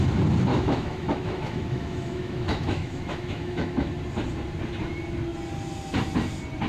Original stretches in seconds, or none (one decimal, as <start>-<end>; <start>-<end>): 0.0-0.5; 3.9-6.7